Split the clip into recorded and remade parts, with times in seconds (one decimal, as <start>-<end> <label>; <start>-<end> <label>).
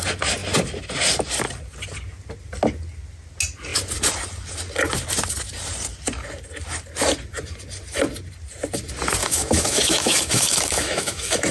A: 0.0-9.2 recorded; 9.2-11.5 remade